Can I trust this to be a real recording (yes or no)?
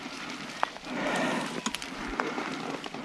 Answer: yes